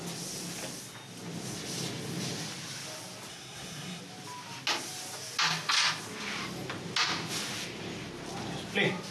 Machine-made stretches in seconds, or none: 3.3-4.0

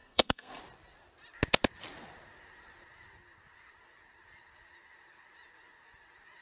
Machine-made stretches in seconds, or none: 0.0-0.6

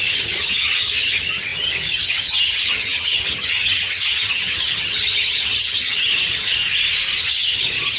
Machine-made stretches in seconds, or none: 0.0-6.6; 7.2-8.0

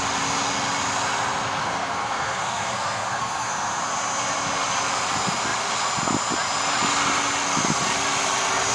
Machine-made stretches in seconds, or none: 1.6-3.8

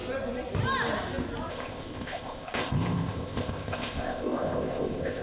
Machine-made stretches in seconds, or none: 1.5-5.2